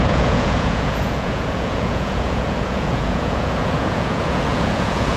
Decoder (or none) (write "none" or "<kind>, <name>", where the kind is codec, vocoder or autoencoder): vocoder, Vocos